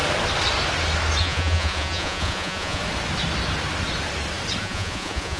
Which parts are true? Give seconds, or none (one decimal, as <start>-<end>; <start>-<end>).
0.0-1.2; 2.8-4.6